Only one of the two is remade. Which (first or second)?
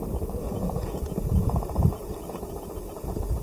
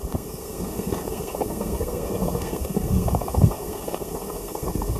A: second